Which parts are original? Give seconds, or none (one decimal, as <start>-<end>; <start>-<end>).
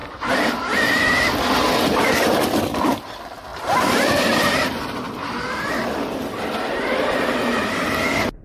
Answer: 0.0-3.5; 4.1-8.4